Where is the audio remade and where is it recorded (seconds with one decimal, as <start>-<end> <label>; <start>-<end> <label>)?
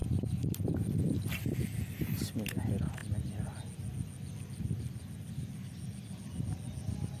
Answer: 0.0-7.2 recorded